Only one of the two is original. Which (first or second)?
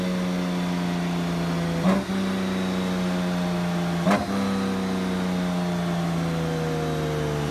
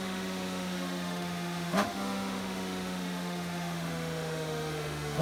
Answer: first